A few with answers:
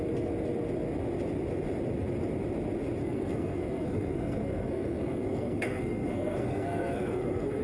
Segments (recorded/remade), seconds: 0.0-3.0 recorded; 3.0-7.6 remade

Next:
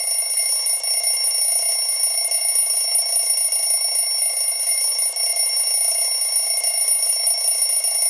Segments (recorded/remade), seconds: 0.0-8.1 recorded